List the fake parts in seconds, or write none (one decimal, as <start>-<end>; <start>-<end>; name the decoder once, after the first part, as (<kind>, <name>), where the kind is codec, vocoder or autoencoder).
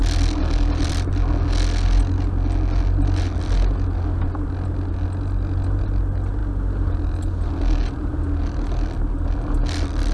none